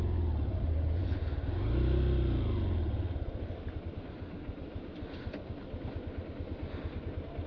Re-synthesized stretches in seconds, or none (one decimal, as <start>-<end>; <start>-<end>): none